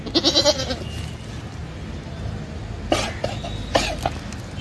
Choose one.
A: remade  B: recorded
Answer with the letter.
B